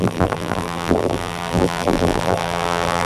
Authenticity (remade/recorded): remade